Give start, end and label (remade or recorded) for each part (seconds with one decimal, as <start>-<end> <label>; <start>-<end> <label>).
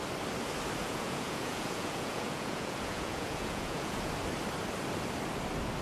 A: 0.0-0.8 recorded; 0.8-4.1 remade; 4.1-5.8 recorded